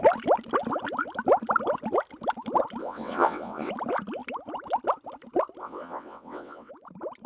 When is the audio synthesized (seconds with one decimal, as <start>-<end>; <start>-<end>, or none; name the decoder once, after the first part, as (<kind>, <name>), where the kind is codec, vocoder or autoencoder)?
2.8-3.7 (vocoder, WaveNeXt); 5.6-6.7